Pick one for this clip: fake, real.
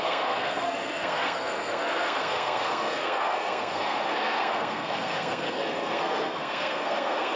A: fake